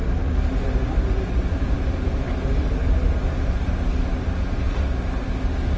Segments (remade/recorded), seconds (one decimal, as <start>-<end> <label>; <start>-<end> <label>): 0.0-5.8 recorded